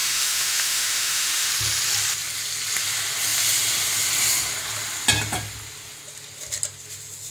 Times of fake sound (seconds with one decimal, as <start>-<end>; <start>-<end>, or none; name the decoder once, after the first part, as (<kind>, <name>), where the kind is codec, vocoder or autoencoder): 0.0-1.5 (autoencoder, DAC-VAE)